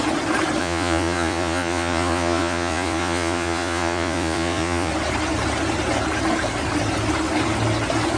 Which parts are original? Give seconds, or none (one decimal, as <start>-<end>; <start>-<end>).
0.0-0.6; 4.9-8.2